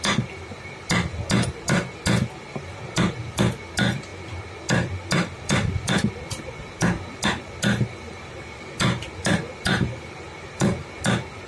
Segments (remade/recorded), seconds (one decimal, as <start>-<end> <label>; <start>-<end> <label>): 0.0-11.5 recorded